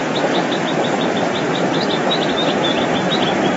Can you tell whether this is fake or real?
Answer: real